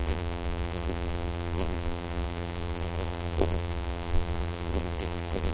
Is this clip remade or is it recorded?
remade